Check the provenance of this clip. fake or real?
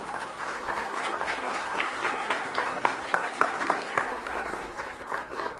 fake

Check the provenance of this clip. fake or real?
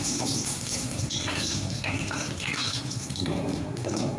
fake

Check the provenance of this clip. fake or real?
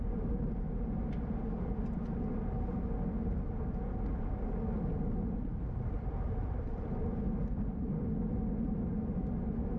real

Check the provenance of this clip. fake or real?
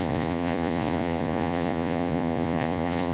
fake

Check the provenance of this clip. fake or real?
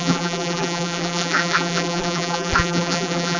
fake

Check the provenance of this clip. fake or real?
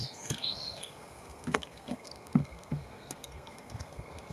fake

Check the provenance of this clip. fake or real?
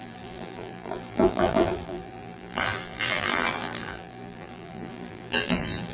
fake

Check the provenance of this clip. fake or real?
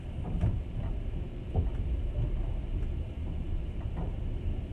real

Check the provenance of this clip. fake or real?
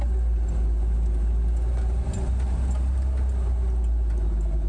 real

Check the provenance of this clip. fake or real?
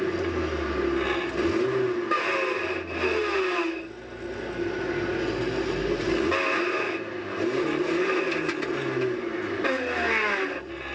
real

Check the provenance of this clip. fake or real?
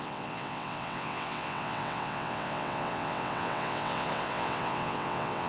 fake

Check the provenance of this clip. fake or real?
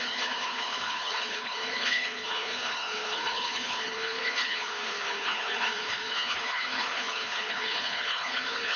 fake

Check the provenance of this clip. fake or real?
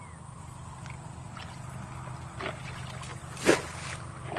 real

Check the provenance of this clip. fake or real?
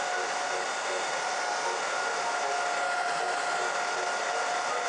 real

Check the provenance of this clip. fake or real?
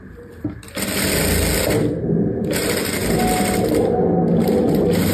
real